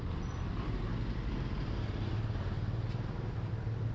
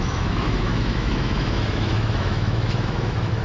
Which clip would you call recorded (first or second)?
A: first